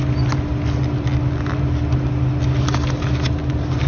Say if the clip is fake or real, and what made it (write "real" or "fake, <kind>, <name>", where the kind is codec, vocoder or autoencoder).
real